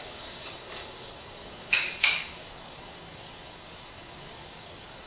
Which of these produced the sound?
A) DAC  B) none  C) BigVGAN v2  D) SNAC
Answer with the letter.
A